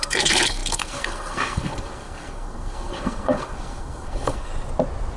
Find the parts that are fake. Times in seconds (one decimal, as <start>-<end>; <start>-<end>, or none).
0.0-4.5